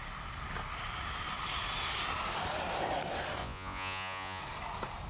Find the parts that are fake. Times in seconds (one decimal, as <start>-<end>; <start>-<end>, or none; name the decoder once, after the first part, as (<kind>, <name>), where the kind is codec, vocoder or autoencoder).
3.4-4.4 (vocoder, Vocos)